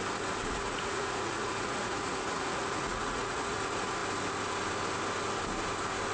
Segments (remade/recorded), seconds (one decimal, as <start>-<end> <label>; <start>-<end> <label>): 0.0-0.4 recorded; 0.4-3.6 remade; 3.6-6.1 recorded